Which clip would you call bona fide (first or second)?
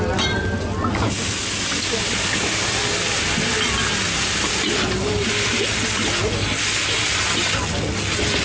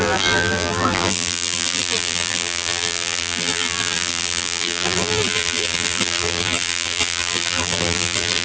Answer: first